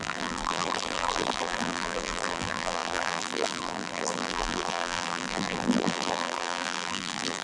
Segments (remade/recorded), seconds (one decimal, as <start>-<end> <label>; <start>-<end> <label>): 0.0-7.4 remade